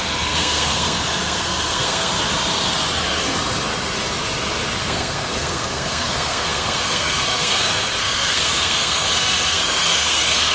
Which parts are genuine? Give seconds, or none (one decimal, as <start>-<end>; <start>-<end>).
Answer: 2.1-4.8